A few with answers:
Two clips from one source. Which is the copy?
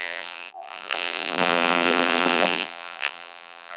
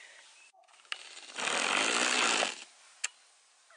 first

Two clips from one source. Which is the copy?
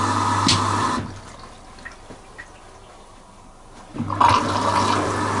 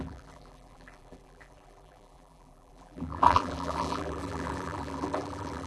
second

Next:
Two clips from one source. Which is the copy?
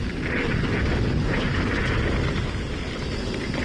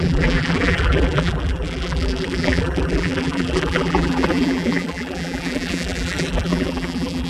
second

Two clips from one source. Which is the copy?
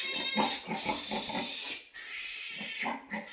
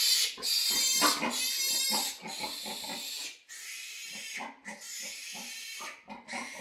first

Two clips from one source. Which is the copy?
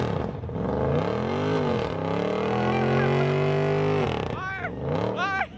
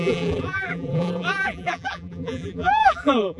second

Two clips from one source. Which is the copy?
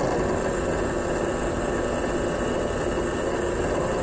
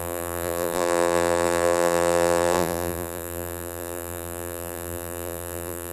second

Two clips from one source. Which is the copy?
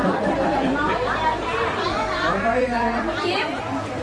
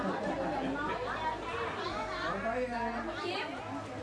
first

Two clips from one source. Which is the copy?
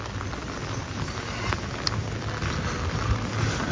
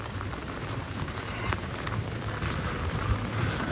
second